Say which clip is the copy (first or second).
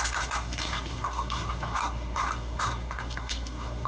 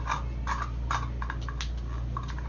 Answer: first